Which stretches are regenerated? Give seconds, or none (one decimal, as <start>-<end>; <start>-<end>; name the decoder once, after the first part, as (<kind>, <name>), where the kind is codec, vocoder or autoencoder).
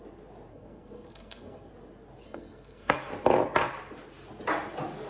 0.5-1.7 (codec, SNAC); 2.2-3.1